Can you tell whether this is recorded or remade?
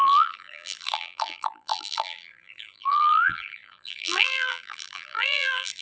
remade